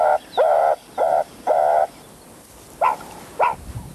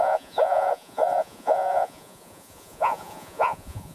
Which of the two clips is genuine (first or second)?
first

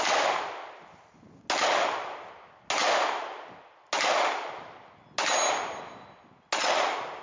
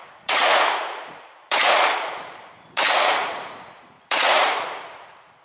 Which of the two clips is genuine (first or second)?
first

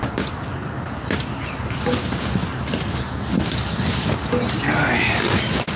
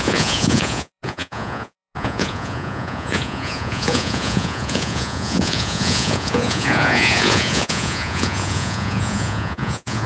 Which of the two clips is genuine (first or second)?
first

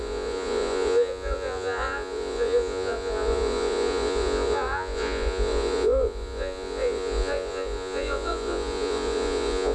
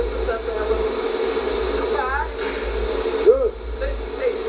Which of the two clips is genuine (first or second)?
second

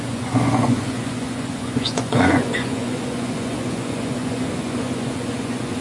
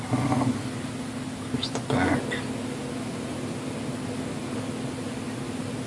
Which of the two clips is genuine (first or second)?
second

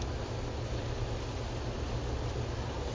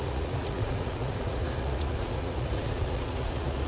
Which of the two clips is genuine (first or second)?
first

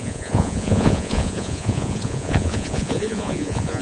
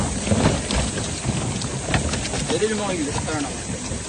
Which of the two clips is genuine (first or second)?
second